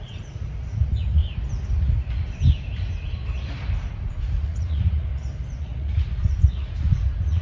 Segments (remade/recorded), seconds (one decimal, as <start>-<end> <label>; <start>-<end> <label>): 0.0-1.2 remade; 1.2-3.9 recorded; 3.9-5.1 remade; 5.1-5.6 recorded; 5.6-7.4 remade